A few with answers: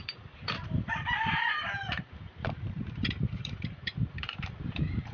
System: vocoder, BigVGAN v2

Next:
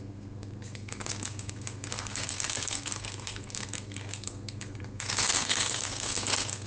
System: codec, SNAC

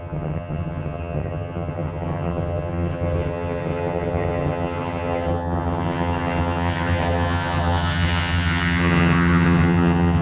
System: vocoder, HiFi-GAN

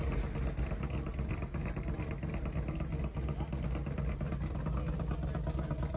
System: none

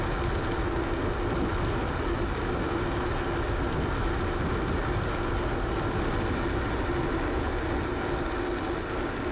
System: none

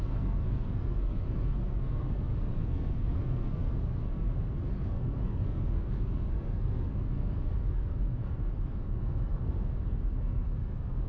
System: codec, SNAC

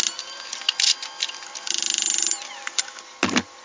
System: none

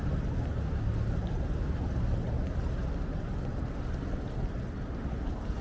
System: none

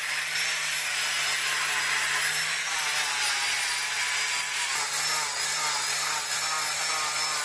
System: none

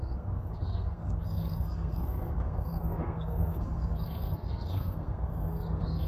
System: codec, SNAC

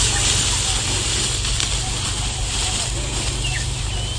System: none